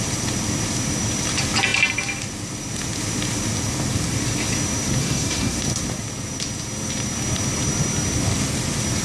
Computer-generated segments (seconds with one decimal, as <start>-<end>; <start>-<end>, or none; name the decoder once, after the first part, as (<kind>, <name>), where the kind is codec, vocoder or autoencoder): 5.0-5.6 (codec, SNAC)